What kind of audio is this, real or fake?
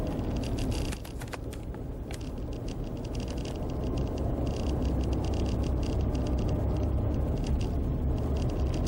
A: real